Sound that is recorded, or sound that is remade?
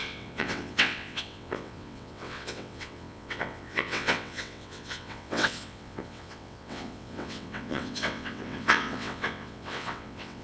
remade